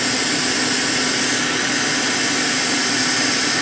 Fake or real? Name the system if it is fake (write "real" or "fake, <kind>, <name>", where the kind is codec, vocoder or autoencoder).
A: real